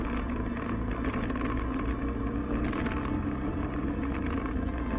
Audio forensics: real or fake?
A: real